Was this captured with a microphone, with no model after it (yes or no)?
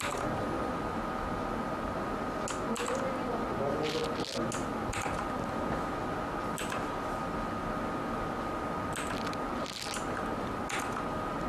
yes